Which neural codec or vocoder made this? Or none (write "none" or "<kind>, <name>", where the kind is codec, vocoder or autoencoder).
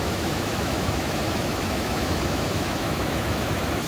autoencoder, DAC-VAE